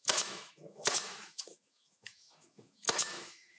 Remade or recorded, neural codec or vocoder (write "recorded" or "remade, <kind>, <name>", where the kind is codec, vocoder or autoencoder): remade, autoencoder, DAC-VAE